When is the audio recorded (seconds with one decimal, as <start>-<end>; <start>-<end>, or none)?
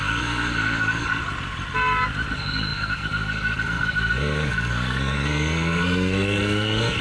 1.2-2.3